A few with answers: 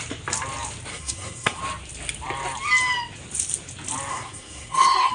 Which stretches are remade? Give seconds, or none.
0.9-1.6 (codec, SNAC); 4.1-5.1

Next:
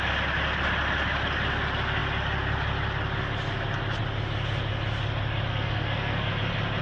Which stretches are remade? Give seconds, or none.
5.5-6.3 (codec, SNAC)

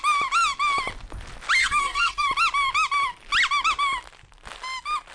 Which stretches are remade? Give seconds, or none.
1.6-2.3 (codec, SNAC)